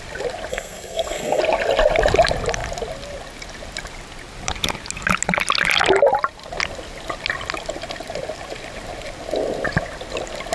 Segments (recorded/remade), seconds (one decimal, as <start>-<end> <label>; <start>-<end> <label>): 0.0-0.5 recorded; 0.5-1.4 remade; 1.4-10.5 recorded

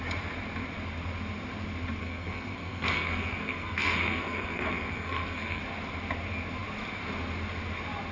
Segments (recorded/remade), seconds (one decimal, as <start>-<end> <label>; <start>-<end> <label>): 0.0-2.0 recorded; 2.0-5.6 remade; 5.6-8.1 recorded

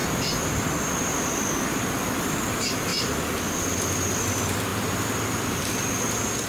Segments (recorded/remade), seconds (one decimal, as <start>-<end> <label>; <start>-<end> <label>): 0.0-6.5 recorded

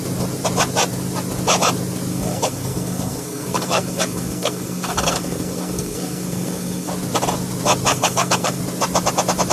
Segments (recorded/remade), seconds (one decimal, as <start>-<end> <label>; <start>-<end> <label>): 0.0-2.1 recorded; 2.1-6.9 remade; 6.9-7.9 recorded; 7.9-8.6 remade; 8.6-9.5 recorded

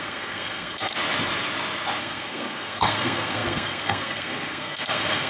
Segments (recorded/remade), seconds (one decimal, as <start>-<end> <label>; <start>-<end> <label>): 0.0-0.9 remade; 0.9-2.0 recorded; 2.0-5.3 remade